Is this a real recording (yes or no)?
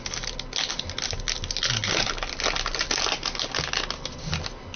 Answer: yes